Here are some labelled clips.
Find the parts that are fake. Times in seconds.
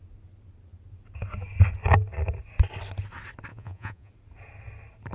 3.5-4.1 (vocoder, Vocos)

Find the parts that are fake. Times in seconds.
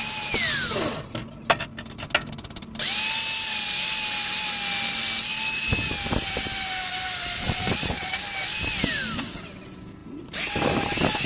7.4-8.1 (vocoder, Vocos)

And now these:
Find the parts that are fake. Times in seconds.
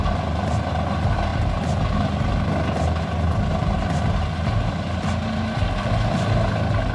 none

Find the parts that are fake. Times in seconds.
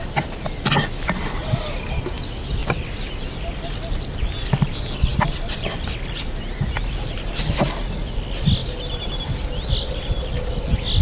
none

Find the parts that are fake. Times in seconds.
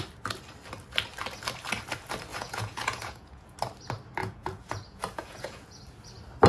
2.3-3.5 (vocoder, Vocos); 4.2-5.8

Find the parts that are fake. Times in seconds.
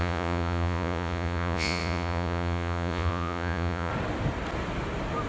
0.0-3.9 (vocoder, Vocos)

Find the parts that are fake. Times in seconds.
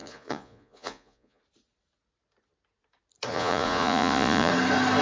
0.0-1.4 (vocoder, Vocos); 3.3-4.5